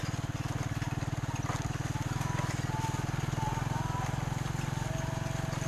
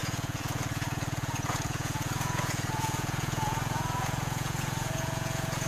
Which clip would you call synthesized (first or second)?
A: second